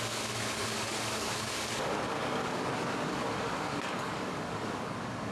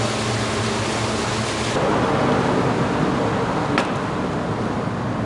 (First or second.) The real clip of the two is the second